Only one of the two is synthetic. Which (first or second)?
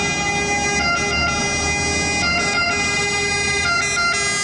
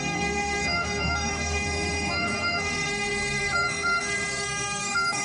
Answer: second